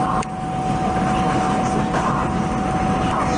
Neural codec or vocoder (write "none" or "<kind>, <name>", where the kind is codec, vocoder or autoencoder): none